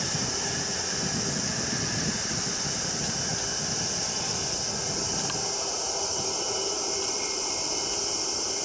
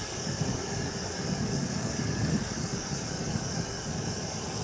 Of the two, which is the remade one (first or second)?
second